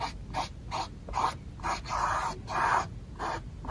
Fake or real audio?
real